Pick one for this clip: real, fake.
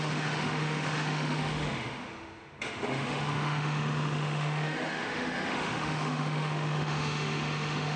fake